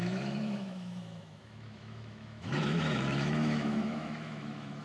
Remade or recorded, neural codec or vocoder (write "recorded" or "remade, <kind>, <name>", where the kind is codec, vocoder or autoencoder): remade, autoencoder, DAC-VAE